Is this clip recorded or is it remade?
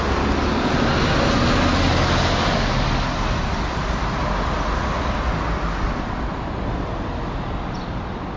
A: recorded